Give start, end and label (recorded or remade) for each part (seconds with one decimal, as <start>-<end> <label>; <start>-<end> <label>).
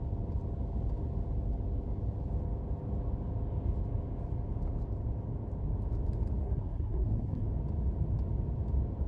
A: 0.0-6.4 recorded; 6.4-7.4 remade; 7.4-9.1 recorded